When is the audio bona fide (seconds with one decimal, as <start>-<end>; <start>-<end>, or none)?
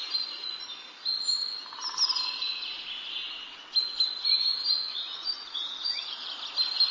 0.0-4.8; 6.4-6.9